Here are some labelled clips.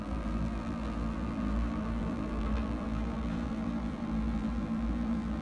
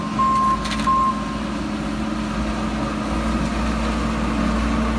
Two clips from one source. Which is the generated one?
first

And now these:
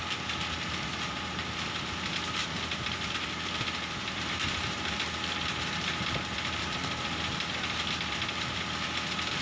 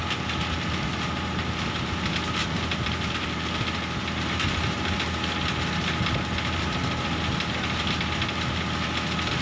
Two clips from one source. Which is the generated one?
first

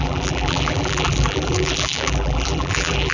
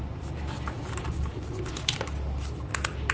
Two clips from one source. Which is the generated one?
first